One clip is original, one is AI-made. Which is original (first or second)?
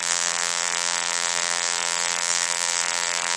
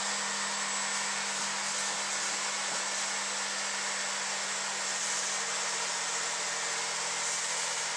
second